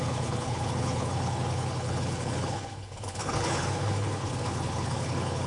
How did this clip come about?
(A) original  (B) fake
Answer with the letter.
B